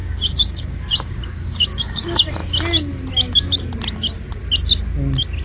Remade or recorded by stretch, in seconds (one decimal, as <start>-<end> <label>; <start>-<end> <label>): 0.0-2.0 remade; 2.0-5.4 recorded